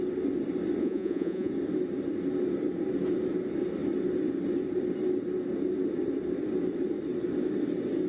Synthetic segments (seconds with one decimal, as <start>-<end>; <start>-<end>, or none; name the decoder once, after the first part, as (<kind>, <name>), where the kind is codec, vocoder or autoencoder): 0.8-1.5 (vocoder, Vocos)